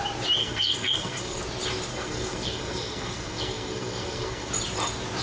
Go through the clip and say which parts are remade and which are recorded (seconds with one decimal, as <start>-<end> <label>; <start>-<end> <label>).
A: 0.0-0.4 recorded; 0.4-1.4 remade; 1.4-1.9 recorded; 1.9-4.5 remade; 4.5-5.2 recorded